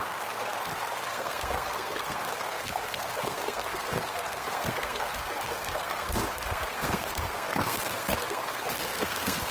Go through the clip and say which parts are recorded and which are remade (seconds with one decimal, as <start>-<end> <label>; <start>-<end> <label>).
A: 0.0-9.5 remade